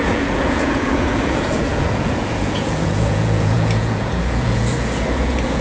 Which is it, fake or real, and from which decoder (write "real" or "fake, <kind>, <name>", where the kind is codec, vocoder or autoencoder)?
fake, vocoder, Vocos